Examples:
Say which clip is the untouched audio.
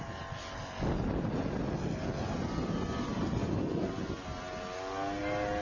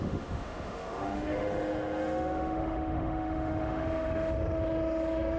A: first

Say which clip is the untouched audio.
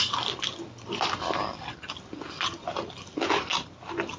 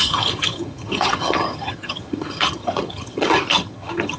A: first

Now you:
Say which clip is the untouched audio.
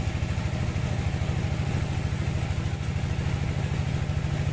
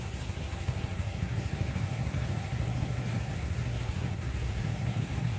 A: first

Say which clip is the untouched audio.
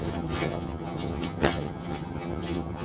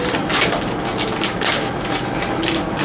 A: second